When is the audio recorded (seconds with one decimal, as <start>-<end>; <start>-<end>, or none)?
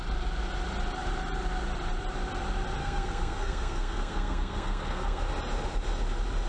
0.0-2.8; 5.2-6.5